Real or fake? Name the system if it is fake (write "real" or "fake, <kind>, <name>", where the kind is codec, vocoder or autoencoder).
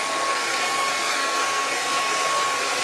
fake, codec, SNAC